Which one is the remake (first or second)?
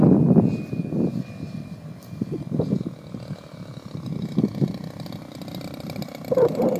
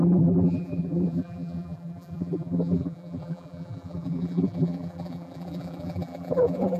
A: second